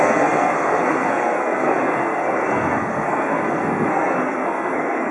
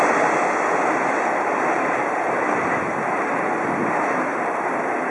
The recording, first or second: second